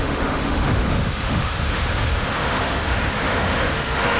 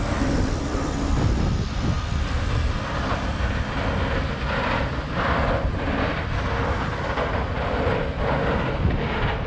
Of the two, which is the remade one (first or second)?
first